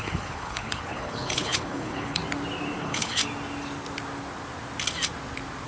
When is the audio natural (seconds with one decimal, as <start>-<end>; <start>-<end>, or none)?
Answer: 2.2-2.8; 3.2-5.7